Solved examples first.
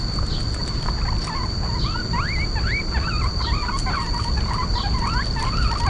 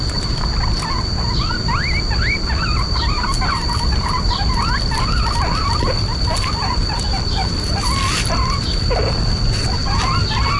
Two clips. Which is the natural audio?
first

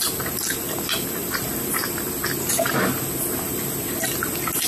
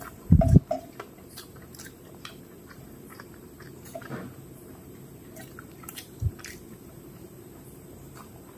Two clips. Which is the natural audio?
first